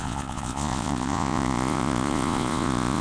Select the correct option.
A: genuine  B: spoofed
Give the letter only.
B